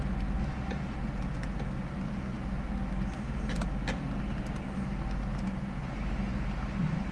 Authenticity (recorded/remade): recorded